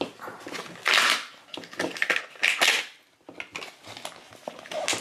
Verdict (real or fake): real